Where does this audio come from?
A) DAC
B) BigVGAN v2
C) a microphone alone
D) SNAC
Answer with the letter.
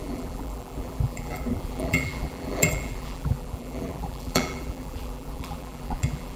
B